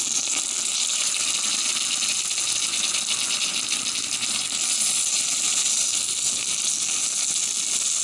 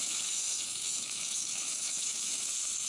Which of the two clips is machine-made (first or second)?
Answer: second